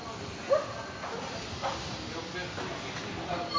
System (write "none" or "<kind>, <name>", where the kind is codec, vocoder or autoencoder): none